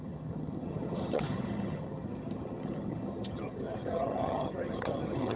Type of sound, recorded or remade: remade